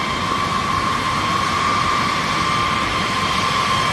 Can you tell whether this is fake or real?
real